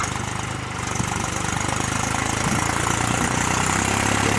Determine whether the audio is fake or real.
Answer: real